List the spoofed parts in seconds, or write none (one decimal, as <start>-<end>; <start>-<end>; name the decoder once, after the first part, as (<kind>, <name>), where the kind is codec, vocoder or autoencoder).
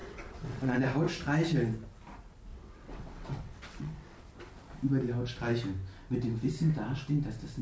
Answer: 0.0-0.8 (vocoder, WaveNeXt); 2.5-4.2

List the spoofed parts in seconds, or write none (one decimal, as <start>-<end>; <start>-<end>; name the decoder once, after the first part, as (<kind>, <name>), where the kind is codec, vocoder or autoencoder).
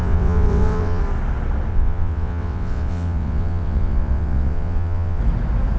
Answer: 0.0-1.0 (vocoder, WaveNeXt); 1.7-5.2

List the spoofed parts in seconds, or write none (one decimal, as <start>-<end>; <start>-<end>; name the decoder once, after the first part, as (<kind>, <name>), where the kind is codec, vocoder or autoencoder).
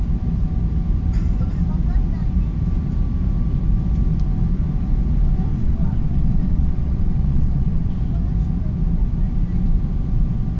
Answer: 5.5-8.0 (vocoder, WaveNeXt)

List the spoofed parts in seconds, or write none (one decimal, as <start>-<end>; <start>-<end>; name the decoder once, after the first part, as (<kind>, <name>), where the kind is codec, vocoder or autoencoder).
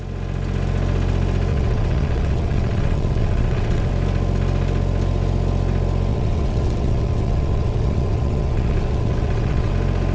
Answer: 1.5-3.9 (vocoder, WaveNeXt); 6.1-9.7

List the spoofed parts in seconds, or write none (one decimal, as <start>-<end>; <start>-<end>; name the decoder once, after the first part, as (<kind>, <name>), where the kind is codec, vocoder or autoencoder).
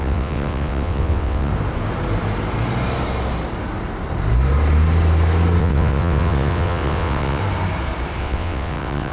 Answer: 0.0-1.5 (vocoder, WaveNeXt); 5.6-7.4; 8.2-9.1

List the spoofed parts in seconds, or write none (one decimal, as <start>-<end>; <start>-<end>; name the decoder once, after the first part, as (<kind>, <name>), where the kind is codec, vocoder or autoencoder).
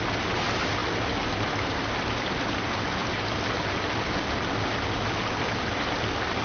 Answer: none